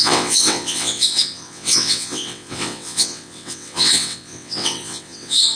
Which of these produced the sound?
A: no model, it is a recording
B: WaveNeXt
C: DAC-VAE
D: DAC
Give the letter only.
B